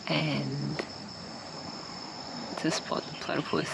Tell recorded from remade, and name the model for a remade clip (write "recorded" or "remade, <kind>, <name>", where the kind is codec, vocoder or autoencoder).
remade, vocoder, Vocos